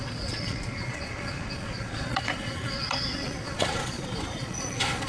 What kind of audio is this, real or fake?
fake